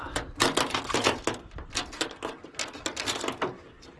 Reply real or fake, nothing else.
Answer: real